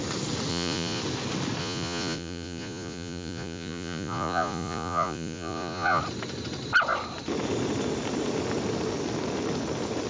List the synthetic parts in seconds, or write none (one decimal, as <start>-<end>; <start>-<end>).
0.5-1.0; 1.6-6.0